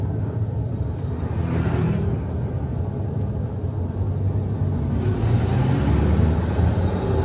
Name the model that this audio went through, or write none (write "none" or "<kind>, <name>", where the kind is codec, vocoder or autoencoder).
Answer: none